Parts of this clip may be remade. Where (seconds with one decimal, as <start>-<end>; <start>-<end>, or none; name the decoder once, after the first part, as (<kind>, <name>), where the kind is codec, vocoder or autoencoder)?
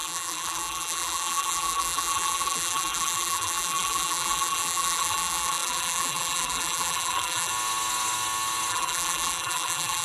0.0-7.5 (vocoder, BigVGAN v2); 8.7-10.0